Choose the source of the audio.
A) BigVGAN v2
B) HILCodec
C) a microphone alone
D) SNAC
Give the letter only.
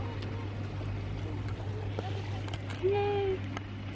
C